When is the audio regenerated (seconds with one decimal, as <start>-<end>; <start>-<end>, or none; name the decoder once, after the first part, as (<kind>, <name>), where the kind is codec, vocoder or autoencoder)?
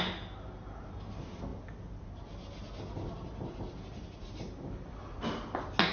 none